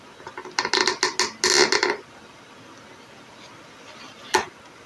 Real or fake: real